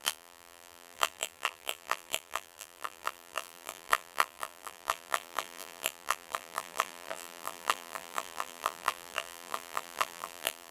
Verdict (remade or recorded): remade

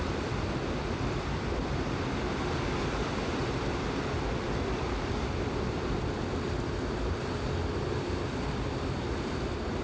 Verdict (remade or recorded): remade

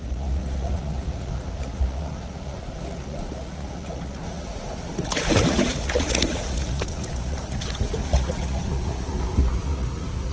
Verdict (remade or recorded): remade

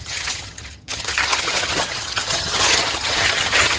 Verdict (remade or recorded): remade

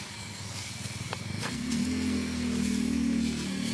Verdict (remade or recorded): remade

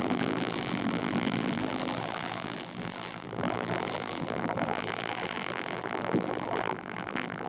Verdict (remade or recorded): remade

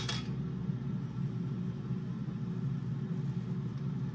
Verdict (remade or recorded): recorded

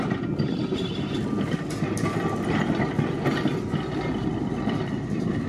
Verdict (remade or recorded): recorded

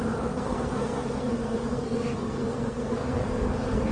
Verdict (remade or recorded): remade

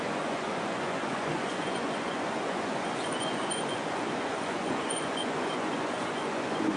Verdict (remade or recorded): remade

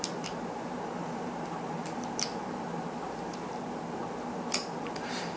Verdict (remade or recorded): recorded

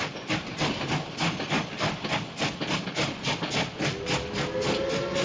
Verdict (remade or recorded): recorded